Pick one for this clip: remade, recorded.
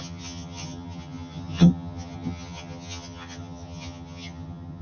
remade